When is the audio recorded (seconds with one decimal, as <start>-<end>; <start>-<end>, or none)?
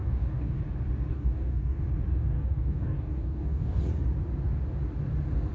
0.6-1.1; 1.8-2.2; 3.8-5.5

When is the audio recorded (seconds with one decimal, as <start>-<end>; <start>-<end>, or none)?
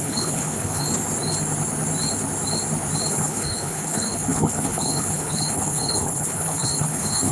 0.8-3.1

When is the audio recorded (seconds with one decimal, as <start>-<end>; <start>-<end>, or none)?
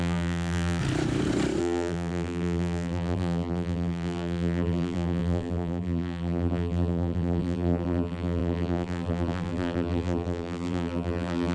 0.8-1.6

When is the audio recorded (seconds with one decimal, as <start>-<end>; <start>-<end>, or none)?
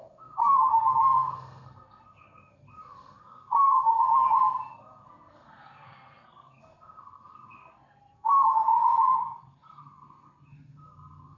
none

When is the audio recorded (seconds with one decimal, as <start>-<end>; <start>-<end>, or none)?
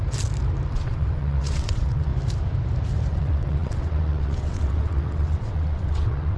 0.0-0.7; 2.1-3.1